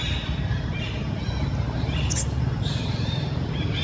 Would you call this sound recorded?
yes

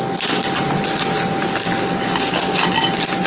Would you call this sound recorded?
yes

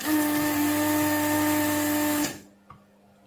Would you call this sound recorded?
yes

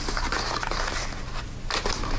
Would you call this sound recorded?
yes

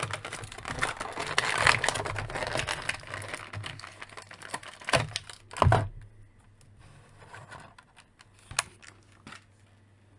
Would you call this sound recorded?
yes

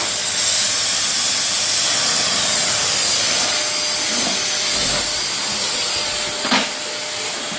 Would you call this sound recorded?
yes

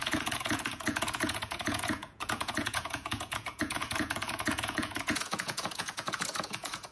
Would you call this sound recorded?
no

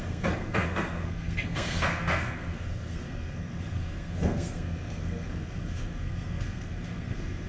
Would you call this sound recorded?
no